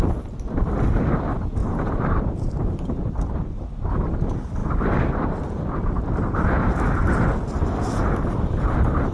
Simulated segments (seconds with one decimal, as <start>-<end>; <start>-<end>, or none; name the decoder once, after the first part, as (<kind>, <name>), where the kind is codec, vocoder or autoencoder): 1.6-3.2 (vocoder, BigVGAN v2); 4.6-5.2